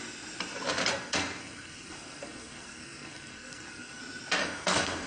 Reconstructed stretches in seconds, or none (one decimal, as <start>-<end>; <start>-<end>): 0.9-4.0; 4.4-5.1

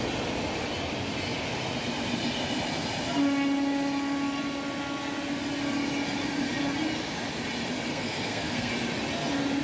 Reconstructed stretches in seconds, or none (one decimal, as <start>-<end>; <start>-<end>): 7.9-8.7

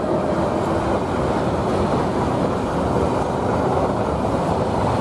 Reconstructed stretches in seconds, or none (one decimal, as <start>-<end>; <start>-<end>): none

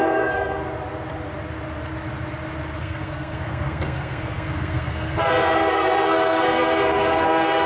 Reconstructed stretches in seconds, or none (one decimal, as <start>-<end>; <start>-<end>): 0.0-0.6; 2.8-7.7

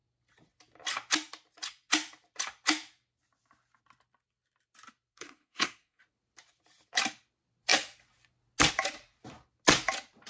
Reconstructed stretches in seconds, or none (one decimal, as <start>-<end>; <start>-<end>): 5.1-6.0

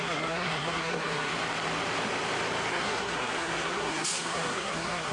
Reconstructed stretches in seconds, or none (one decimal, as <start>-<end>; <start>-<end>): 0.0-1.3; 2.7-5.1